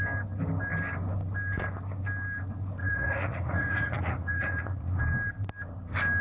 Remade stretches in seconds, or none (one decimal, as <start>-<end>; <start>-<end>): 2.8-5.0